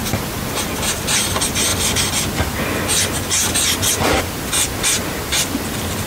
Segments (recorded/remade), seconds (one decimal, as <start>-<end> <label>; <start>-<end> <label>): 0.0-6.1 recorded